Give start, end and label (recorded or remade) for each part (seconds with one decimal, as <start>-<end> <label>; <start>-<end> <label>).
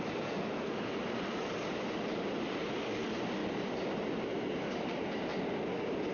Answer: 0.0-5.3 remade; 5.3-6.1 recorded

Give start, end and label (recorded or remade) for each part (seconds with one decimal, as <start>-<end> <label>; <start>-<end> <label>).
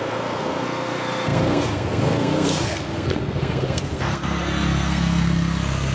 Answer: 0.0-5.9 remade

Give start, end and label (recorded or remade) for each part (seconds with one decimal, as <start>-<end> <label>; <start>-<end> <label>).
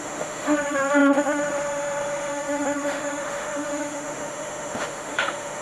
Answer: 0.0-5.6 remade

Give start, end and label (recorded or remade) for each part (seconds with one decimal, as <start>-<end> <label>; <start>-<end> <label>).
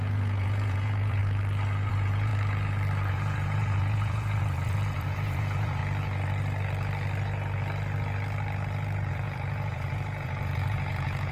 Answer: 0.0-1.2 remade; 1.2-1.9 recorded; 1.9-2.3 remade; 2.3-3.1 recorded; 3.1-5.8 remade; 5.8-9.1 recorded; 9.1-11.3 remade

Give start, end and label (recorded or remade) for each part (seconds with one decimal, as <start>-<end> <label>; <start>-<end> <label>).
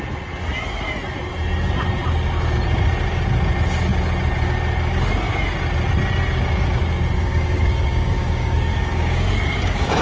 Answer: 0.0-7.2 recorded; 7.2-10.0 remade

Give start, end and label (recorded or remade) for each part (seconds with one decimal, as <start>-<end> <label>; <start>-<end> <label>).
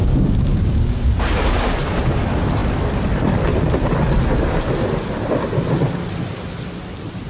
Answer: 0.0-1.1 remade; 1.1-7.3 recorded